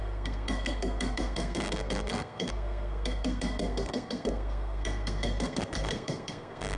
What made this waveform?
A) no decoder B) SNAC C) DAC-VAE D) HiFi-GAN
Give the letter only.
B